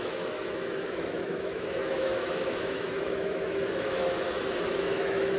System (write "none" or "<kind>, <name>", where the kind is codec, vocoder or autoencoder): autoencoder, DAC-VAE